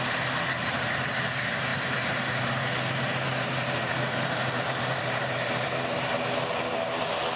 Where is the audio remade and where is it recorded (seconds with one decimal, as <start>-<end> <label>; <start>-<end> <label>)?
0.0-0.6 recorded; 0.6-1.1 remade; 1.1-1.7 recorded; 1.7-6.1 remade; 6.1-7.4 recorded